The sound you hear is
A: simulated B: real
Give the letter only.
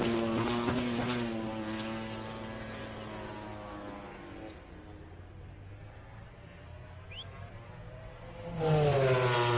B